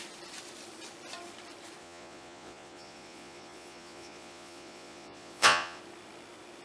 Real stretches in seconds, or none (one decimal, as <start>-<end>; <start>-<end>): 0.0-1.8; 5.8-6.6